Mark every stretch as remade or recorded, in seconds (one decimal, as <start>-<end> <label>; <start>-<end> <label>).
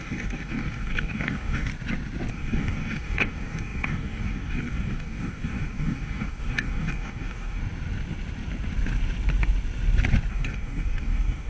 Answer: 0.0-1.7 remade; 1.7-2.3 recorded; 2.3-7.6 remade; 7.6-10.3 recorded; 10.3-11.5 remade